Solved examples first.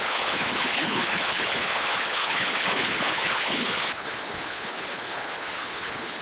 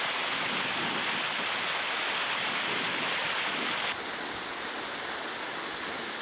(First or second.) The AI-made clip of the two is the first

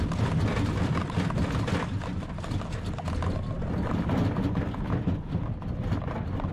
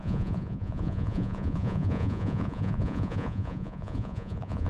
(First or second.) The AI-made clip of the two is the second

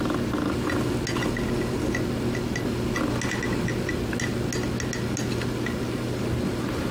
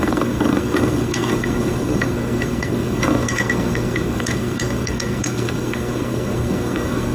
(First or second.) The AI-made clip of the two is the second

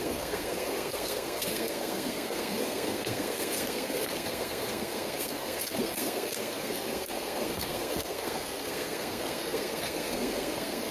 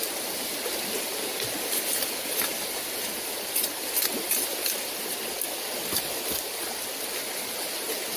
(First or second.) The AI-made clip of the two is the first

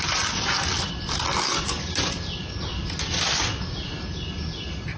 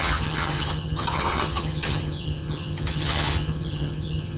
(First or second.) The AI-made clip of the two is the second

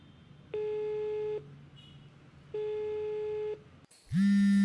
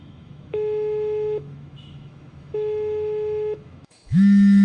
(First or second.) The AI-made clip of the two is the second